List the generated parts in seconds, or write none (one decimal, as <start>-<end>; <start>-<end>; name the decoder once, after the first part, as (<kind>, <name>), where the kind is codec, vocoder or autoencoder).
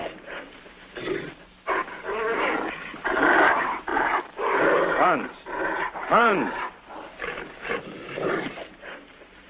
0.0-9.5 (vocoder, BigVGAN v2)